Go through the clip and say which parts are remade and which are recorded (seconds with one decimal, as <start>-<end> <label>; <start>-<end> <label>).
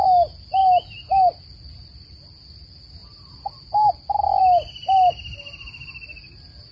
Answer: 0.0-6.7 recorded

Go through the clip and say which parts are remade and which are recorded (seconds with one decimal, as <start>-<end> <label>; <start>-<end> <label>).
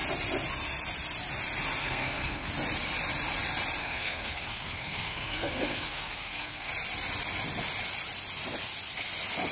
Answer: 0.0-1.8 recorded; 1.8-2.5 remade; 2.5-3.8 recorded; 3.8-6.7 remade; 6.7-9.5 recorded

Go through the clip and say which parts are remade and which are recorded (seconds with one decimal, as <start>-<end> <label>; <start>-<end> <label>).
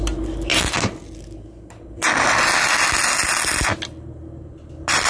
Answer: 0.0-5.1 recorded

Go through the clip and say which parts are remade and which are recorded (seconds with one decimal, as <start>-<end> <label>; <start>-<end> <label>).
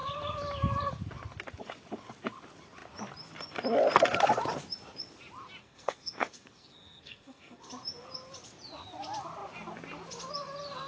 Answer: 0.0-5.6 recorded; 5.6-7.7 remade; 7.7-10.9 recorded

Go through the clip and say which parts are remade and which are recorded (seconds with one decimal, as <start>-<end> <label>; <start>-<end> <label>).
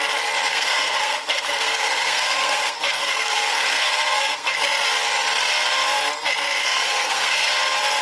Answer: 0.0-0.5 recorded; 0.5-4.5 remade; 4.5-6.6 recorded; 6.6-7.5 remade; 7.5-8.0 recorded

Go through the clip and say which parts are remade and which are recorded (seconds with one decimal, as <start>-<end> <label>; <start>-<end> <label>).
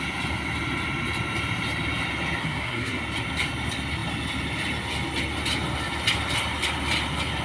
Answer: 0.0-2.4 recorded; 2.4-3.0 remade; 3.0-7.4 recorded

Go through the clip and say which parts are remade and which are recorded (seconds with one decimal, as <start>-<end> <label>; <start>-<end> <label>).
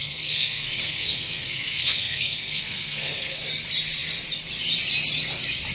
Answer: 0.0-3.4 remade; 3.4-5.7 recorded